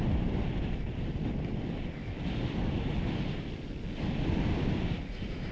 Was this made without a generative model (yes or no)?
no